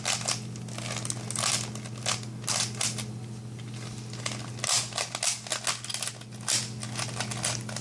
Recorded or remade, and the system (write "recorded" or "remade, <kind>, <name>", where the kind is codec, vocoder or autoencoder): recorded